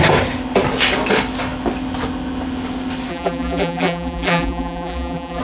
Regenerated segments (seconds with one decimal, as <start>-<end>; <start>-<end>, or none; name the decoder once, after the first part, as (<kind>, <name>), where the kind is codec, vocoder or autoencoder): 3.1-5.4 (vocoder, BigVGAN v2)